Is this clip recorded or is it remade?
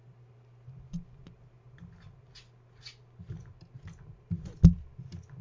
recorded